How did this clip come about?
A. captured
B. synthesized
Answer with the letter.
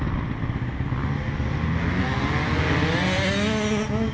A